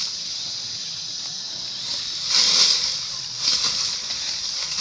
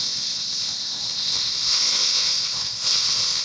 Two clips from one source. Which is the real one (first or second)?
first